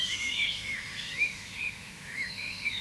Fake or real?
fake